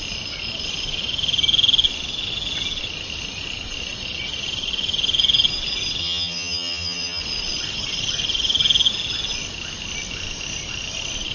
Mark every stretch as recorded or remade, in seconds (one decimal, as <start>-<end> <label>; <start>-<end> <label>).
0.0-6.0 recorded; 6.0-7.2 remade; 7.2-11.3 recorded